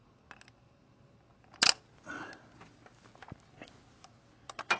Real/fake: real